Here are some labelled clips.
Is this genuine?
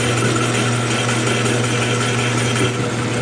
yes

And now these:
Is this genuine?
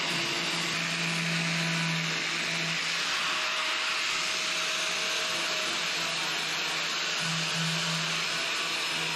yes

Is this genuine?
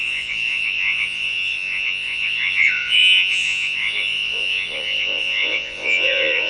no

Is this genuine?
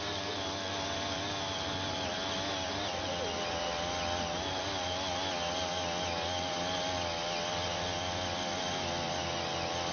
yes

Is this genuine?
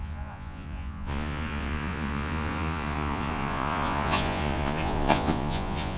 no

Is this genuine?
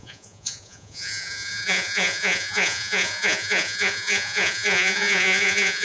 no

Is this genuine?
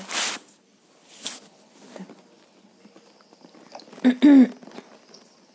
yes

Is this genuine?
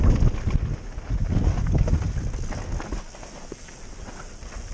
yes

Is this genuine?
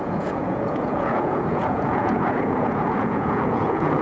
no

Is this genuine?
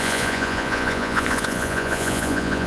no